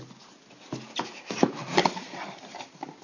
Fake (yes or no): no